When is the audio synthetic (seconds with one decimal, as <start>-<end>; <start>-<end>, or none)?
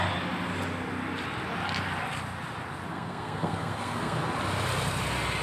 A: 2.9-4.2